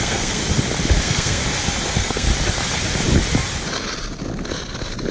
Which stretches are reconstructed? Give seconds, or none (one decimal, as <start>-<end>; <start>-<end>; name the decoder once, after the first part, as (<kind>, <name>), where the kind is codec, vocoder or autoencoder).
0.0-0.4 (codec, SNAC); 1.0-1.4; 1.9-2.3